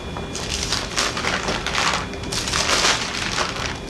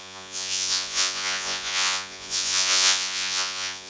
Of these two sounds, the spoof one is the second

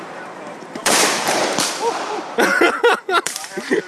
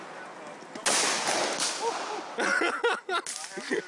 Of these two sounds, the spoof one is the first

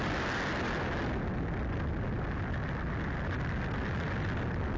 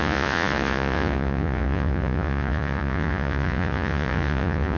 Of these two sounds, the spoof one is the second